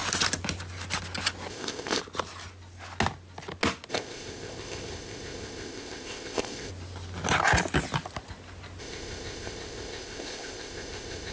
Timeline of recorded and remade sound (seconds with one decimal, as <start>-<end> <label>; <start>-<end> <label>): 0.0-1.5 recorded; 1.5-2.0 remade; 2.0-3.9 recorded; 3.9-6.7 remade; 6.7-8.8 recorded; 8.8-11.3 remade